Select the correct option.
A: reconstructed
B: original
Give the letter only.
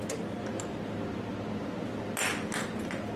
B